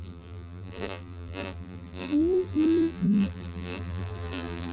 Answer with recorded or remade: remade